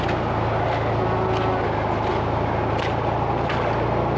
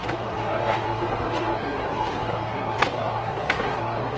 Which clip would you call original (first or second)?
first